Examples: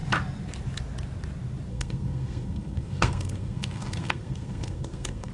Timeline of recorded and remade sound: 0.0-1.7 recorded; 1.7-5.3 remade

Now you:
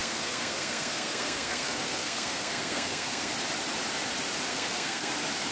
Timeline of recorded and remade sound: 0.0-3.3 remade; 3.3-4.5 recorded; 4.5-5.1 remade; 5.1-5.5 recorded

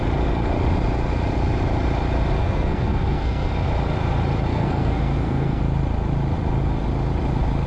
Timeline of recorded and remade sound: 0.0-2.4 recorded; 2.4-3.5 remade; 3.5-4.5 recorded; 4.5-5.6 remade; 5.6-7.7 recorded

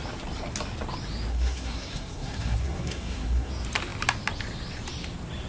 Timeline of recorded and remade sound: 0.0-1.3 recorded; 1.3-3.5 remade; 3.5-5.5 recorded